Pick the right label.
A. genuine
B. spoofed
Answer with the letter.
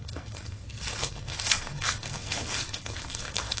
B